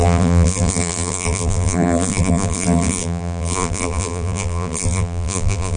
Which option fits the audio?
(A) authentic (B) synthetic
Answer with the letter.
B